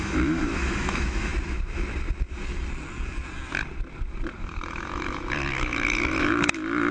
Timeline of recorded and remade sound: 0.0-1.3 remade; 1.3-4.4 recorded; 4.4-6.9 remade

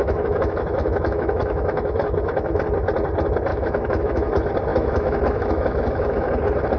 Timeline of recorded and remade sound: 0.0-2.6 remade; 2.6-3.5 recorded; 3.5-4.3 remade; 4.3-4.7 recorded; 4.7-6.3 remade; 6.3-6.8 recorded

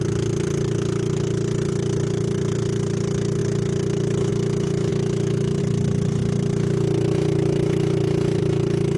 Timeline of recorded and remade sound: 0.0-4.9 recorded; 4.9-5.6 remade; 5.6-9.0 recorded